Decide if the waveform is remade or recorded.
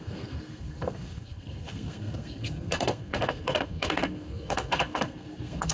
remade